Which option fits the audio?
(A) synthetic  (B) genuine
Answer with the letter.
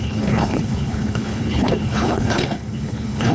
A